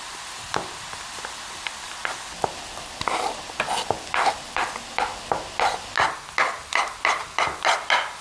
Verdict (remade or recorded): remade